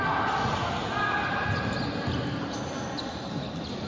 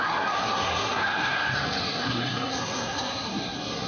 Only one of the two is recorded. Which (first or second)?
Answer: first